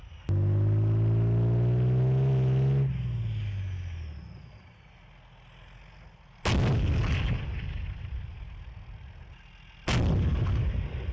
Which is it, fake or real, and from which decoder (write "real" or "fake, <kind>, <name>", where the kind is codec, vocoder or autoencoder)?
real